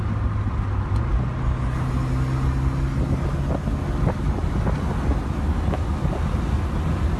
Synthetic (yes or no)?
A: no